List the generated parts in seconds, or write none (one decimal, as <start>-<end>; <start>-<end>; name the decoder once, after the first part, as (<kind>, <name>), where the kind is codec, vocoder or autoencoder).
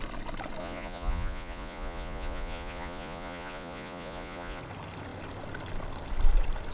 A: 0.6-4.6 (vocoder, Vocos)